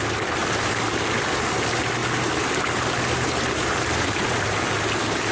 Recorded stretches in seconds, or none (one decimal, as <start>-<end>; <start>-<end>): 0.0-5.3

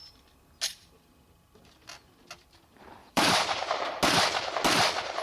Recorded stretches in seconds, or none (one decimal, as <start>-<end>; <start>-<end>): 0.0-3.0; 3.8-5.2

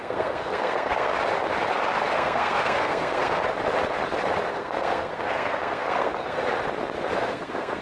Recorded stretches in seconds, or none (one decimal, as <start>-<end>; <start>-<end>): 1.1-2.1; 3.4-4.5; 6.4-7.2

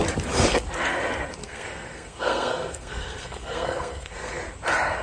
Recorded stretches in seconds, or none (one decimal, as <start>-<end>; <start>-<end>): 0.0-1.4; 4.4-5.0

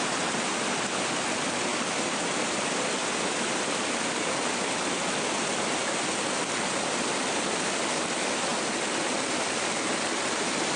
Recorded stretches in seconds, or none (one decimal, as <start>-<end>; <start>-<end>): 0.0-1.7; 6.2-10.8